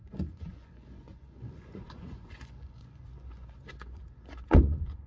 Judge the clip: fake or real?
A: fake